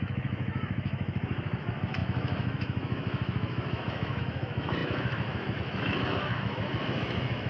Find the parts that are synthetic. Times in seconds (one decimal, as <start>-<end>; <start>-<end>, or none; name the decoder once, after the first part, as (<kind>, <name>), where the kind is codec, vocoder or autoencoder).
0.0-7.5 (autoencoder, DAC-VAE)